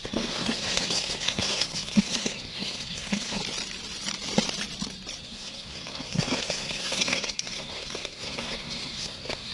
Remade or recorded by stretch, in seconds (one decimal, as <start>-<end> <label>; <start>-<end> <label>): 0.0-3.4 remade; 3.4-5.2 recorded; 5.2-9.5 remade

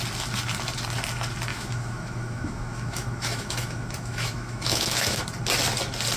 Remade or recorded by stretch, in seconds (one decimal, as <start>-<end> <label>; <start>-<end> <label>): 0.0-1.5 recorded; 1.5-5.2 remade; 5.2-6.2 recorded

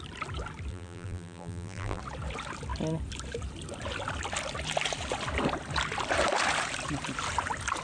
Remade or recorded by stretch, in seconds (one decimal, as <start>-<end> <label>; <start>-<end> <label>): 0.0-0.7 recorded; 0.7-2.0 remade; 2.0-7.8 recorded

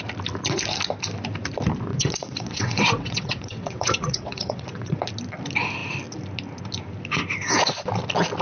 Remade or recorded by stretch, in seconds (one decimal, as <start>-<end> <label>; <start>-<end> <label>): 0.0-1.9 recorded; 1.9-5.0 remade; 5.0-8.4 recorded

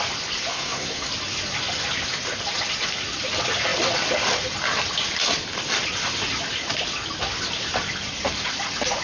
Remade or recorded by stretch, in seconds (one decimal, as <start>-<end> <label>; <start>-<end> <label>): 0.0-0.5 recorded; 0.5-1.1 remade; 1.1-9.0 recorded